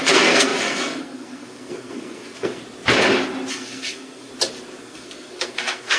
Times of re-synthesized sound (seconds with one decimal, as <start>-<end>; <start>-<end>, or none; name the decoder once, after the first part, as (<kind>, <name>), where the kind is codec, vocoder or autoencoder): 0.0-2.6 (codec, SNAC); 3.5-4.3; 4.8-6.0